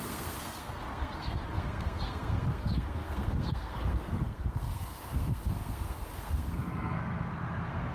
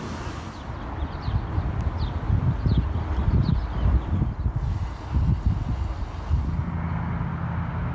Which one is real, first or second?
second